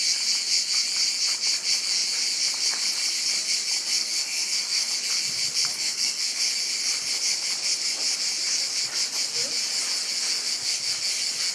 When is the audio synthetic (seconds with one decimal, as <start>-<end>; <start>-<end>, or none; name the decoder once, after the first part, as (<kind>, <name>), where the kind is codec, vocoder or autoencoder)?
4.0-4.9 (codec, SNAC); 5.7-6.4